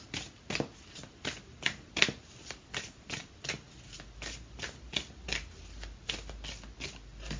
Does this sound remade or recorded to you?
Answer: recorded